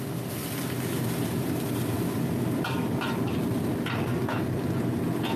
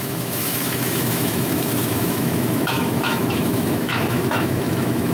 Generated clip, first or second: second